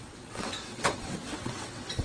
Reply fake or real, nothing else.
fake